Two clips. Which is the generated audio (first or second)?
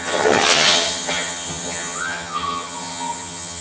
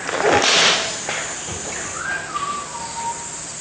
first